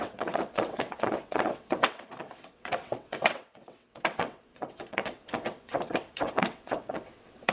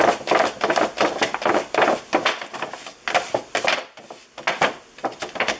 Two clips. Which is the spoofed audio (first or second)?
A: first